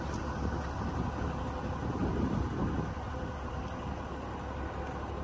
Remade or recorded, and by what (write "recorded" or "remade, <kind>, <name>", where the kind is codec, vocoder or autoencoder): recorded